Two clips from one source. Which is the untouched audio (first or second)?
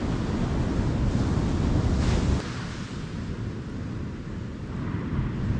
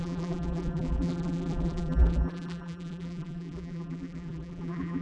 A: first